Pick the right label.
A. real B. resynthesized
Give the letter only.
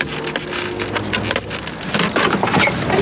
A